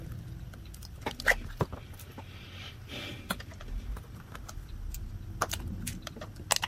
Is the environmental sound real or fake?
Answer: real